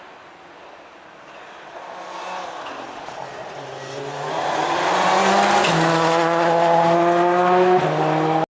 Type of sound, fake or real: real